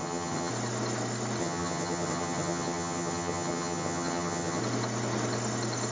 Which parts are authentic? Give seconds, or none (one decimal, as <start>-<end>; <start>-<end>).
0.5-1.4; 4.6-5.9

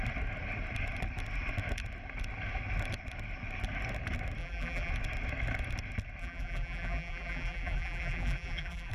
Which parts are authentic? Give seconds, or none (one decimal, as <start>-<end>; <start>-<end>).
0.0-4.4; 4.9-6.2

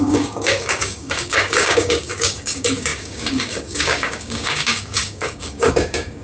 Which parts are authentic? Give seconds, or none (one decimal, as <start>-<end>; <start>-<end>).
none

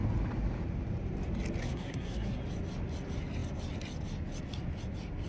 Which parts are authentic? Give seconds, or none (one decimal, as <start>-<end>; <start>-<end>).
0.0-1.6; 2.4-5.3

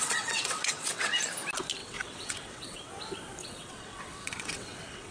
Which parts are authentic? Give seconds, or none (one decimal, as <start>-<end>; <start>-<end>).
1.1-1.8; 2.9-3.4

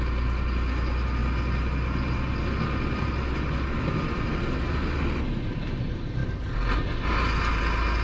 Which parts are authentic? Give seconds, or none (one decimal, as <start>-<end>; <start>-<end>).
0.0-8.0

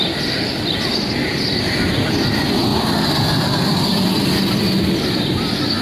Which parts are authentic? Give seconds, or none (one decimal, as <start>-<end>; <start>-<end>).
0.0-5.8

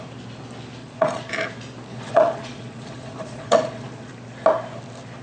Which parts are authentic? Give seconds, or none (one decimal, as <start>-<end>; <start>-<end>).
0.0-0.8; 1.3-1.9; 4.1-5.2